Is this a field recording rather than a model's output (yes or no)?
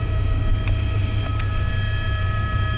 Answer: no